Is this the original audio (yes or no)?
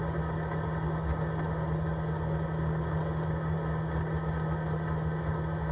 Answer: yes